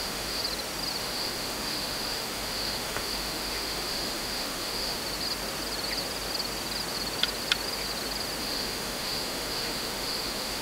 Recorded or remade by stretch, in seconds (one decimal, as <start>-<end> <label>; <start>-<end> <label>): 0.0-0.4 remade; 0.4-1.0 recorded; 1.0-5.0 remade; 5.0-8.4 recorded; 8.4-10.6 remade